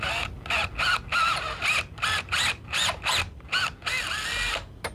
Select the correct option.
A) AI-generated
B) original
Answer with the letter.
B